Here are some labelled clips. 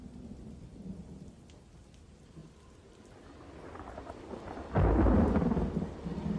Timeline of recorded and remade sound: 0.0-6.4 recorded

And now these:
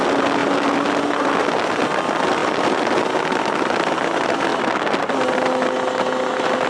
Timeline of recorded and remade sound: 0.0-6.7 recorded

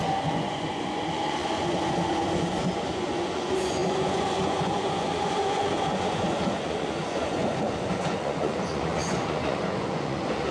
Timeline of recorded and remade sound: 0.0-10.5 remade

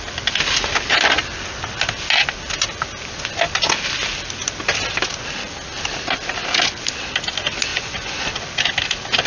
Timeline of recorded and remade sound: 0.0-7.7 recorded; 7.7-8.3 remade; 8.3-9.3 recorded

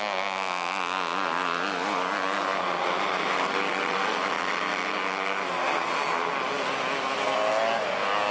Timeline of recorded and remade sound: 0.0-8.3 recorded

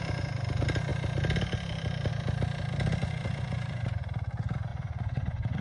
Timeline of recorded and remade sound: 0.0-3.0 recorded; 3.0-4.1 remade; 4.1-4.7 recorded; 4.7-5.6 remade

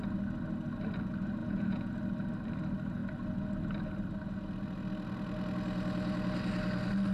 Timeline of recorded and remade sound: 0.0-1.4 recorded; 1.4-1.9 remade; 1.9-7.1 recorded